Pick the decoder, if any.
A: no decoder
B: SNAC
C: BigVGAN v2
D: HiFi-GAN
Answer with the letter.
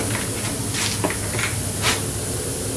A